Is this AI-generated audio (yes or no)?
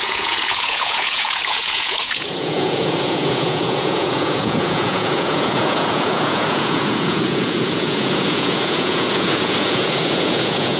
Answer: yes